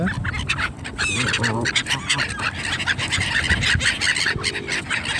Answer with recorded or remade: recorded